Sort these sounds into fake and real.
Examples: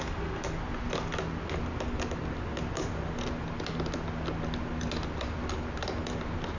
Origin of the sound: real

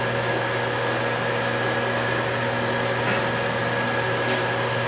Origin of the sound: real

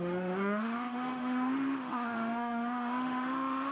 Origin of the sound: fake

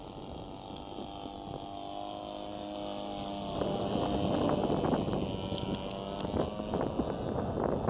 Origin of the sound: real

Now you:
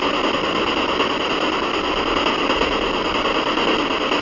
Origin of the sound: real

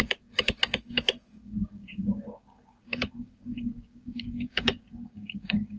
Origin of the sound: fake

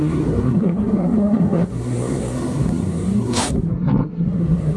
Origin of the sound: fake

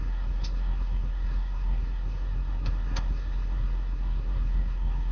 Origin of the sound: fake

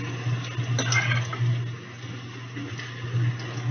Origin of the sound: real